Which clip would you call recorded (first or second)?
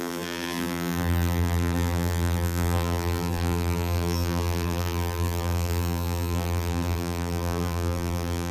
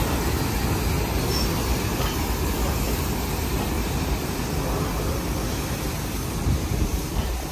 second